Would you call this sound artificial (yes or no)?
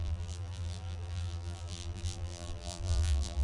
yes